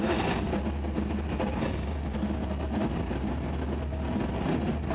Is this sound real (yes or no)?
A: yes